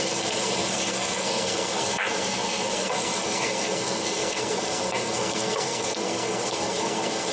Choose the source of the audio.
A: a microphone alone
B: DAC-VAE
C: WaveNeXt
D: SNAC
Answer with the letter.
D